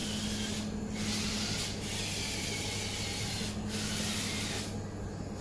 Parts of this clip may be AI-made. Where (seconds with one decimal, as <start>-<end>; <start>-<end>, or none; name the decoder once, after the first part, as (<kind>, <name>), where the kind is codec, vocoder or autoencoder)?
none